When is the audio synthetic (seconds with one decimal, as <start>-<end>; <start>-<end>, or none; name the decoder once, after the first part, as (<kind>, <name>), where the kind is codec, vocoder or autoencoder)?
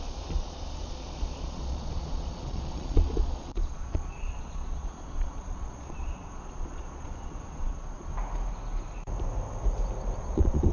0.0-8.1 (vocoder, Vocos); 10.2-10.7